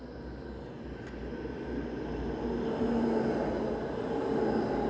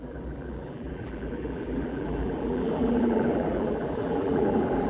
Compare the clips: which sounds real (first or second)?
first